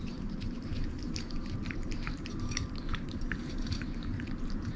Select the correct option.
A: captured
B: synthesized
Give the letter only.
B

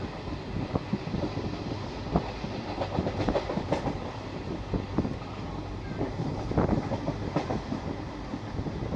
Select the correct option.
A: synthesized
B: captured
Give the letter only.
B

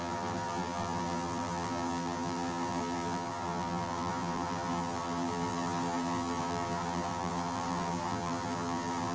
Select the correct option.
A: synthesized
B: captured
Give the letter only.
A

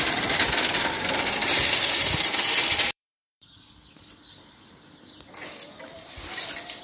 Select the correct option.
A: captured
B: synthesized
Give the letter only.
B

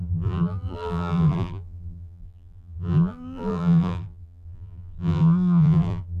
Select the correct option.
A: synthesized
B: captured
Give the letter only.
A